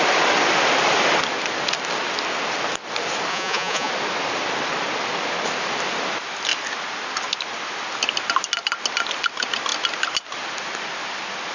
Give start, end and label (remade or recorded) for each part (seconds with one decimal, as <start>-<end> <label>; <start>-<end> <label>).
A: 0.0-3.3 recorded; 3.3-3.9 remade; 3.9-11.5 recorded